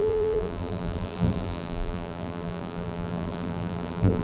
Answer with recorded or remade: remade